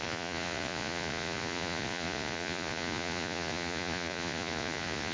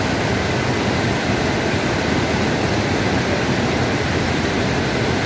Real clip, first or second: second